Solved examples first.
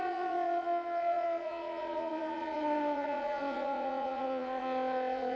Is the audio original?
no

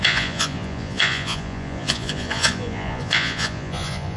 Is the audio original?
no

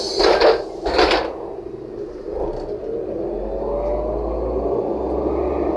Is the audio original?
yes